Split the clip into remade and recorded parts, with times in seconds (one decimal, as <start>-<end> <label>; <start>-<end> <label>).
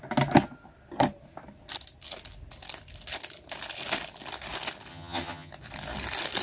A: 0.0-4.9 recorded; 4.9-5.5 remade; 5.5-6.4 recorded